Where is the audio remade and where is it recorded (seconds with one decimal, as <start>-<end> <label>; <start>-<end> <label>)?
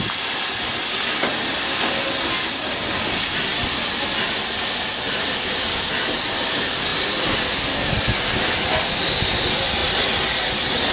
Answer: 0.0-10.9 recorded